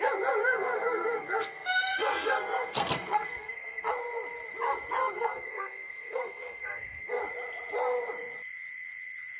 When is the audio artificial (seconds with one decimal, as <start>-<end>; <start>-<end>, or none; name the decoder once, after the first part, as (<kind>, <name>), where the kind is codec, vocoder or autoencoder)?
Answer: 0.4-3.9 (codec, SNAC); 5.0-7.2